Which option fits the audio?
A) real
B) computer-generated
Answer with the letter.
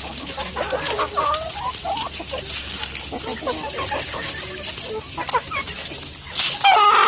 A